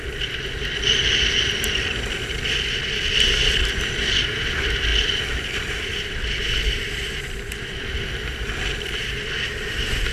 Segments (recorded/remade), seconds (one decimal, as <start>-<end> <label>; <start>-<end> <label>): 0.0-10.1 recorded